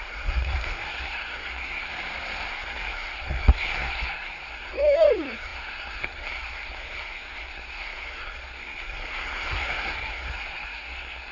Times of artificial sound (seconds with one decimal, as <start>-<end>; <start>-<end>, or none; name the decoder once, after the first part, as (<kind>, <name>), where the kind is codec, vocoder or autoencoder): 0.0-1.9 (codec, SNAC); 2.5-11.3

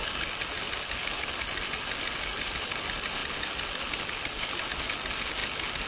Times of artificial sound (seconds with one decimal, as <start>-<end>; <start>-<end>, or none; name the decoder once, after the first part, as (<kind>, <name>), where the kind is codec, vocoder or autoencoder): none

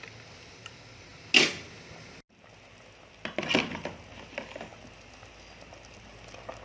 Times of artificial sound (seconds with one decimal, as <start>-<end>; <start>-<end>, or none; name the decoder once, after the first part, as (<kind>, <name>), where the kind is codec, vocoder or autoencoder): none